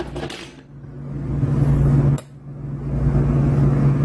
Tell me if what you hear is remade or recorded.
recorded